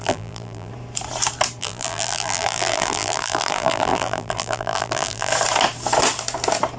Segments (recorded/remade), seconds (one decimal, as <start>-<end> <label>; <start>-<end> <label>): 0.0-0.7 remade; 0.7-1.6 recorded; 1.6-5.3 remade; 5.3-6.8 recorded